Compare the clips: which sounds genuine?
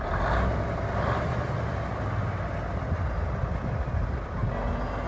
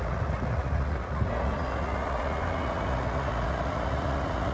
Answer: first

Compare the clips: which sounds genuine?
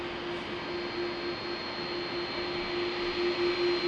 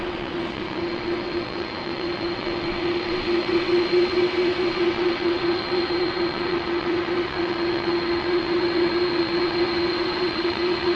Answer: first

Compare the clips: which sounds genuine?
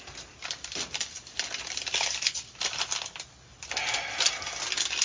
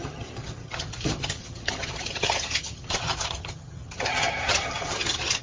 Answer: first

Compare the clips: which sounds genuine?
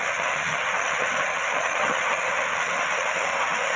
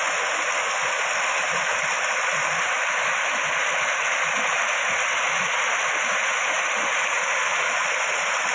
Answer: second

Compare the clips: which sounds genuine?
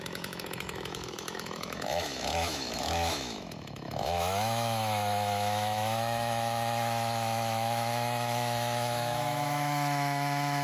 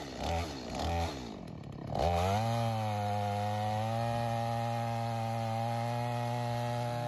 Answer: second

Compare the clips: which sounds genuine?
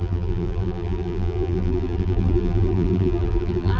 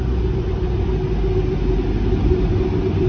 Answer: second